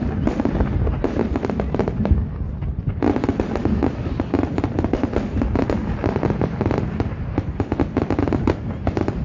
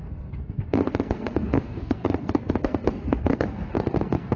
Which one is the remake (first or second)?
second